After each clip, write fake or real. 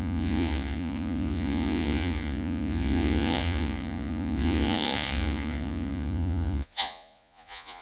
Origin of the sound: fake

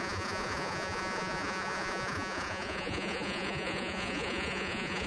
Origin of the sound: fake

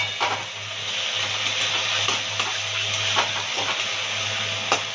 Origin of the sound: real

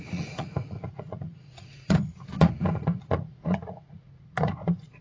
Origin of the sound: fake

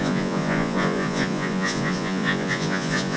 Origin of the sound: fake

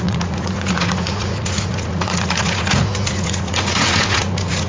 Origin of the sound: fake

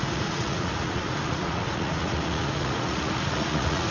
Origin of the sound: fake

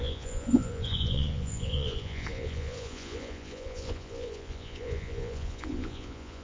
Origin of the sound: fake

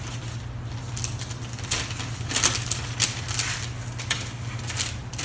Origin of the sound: real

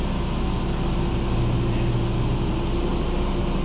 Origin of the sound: real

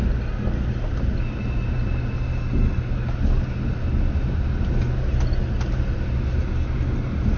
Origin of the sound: real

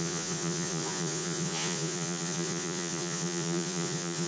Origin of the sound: fake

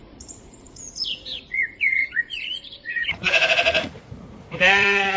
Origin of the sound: fake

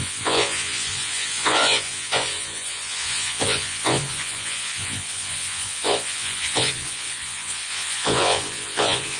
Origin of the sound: fake